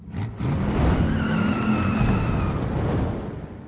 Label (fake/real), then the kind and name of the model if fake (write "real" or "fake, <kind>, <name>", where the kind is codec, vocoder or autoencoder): real